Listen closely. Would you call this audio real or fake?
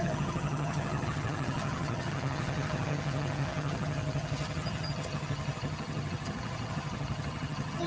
fake